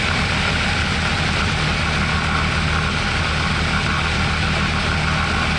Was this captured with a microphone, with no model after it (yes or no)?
yes